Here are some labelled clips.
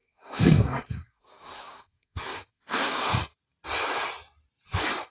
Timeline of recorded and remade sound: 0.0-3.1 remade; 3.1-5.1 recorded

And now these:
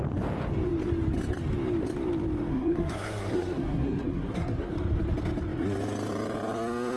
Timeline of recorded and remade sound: 0.0-2.5 recorded; 2.5-4.7 remade; 4.7-7.0 recorded

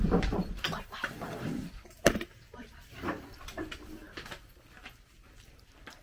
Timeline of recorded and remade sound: 0.0-4.0 remade; 4.0-5.5 recorded; 5.5-6.0 remade

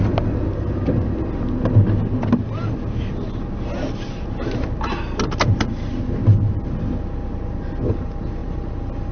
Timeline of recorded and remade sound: 0.0-8.4 recorded; 8.4-9.1 remade

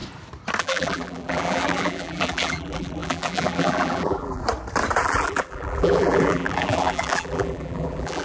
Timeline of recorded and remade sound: 0.0-0.6 recorded; 0.6-4.4 remade; 4.4-5.0 recorded; 5.0-8.2 remade

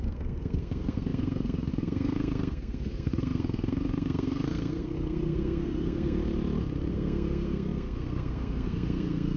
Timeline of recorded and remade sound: 0.0-6.2 remade; 6.2-6.9 recorded; 6.9-9.4 remade